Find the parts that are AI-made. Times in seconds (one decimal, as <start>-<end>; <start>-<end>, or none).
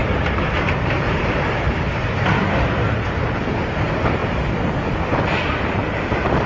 none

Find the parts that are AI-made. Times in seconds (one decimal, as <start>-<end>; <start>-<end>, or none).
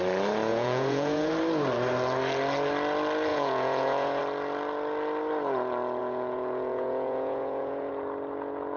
0.5-1.3; 3.3-4.2; 6.0-7.9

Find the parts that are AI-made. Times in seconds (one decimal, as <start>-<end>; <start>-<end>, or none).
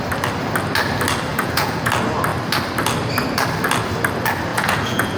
1.3-1.9; 4.5-5.2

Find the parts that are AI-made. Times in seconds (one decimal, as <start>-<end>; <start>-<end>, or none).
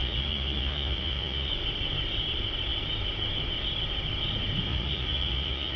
0.0-1.5; 4.7-5.8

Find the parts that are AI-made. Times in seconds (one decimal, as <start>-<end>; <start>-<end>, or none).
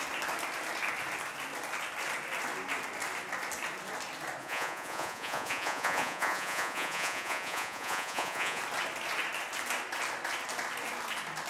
4.4-8.6